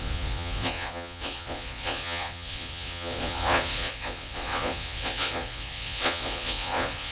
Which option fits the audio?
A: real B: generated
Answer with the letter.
B